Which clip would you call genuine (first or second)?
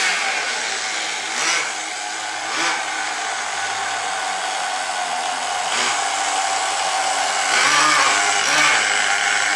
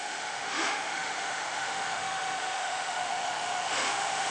first